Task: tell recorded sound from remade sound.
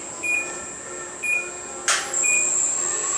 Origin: recorded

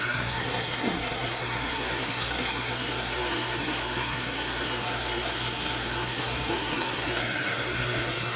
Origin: remade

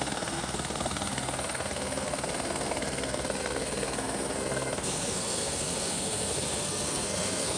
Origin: remade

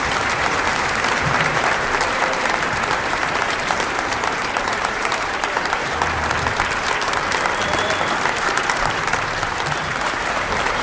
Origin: remade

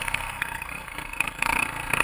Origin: remade